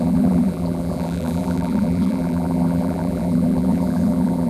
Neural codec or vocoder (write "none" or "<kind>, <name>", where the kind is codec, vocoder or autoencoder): vocoder, BigVGAN v2